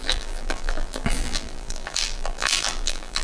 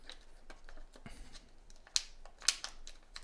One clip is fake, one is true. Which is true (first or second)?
second